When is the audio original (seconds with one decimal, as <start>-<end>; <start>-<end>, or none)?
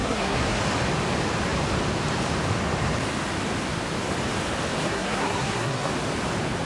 0.6-4.8; 5.9-6.7